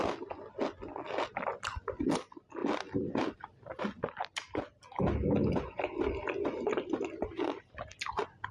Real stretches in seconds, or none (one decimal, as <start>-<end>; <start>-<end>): 0.0-2.6; 3.8-8.5

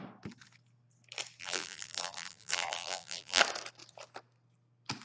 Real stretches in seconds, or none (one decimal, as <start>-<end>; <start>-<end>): 0.0-1.4; 3.4-5.0

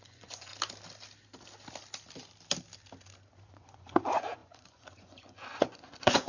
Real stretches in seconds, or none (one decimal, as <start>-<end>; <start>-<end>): 0.5-3.5

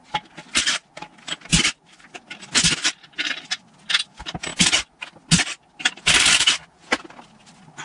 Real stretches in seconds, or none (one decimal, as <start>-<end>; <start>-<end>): 0.0-7.8

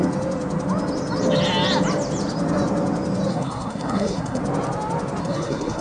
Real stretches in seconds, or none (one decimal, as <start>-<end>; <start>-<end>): 0.0-3.3; 4.4-5.2